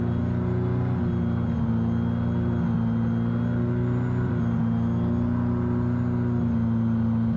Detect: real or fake real